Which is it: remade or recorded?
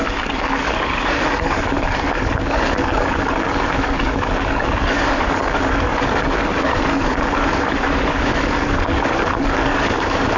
remade